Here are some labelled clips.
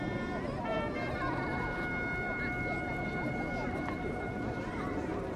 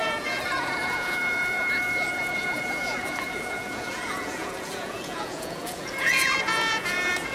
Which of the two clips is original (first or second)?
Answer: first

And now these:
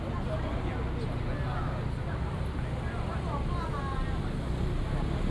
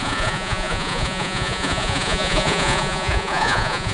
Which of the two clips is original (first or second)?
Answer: first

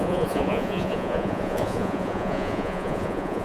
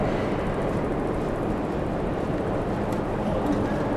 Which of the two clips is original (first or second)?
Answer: second